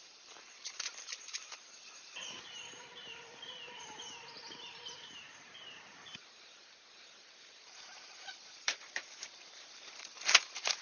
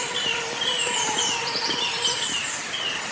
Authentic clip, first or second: second